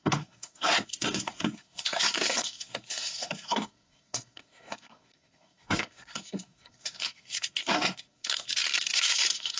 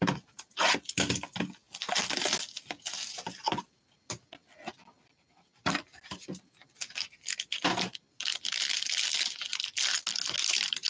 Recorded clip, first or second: second